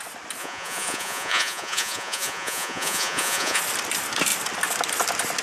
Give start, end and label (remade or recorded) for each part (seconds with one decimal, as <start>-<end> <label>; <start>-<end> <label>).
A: 0.0-0.4 recorded; 0.4-3.6 remade; 3.6-5.4 recorded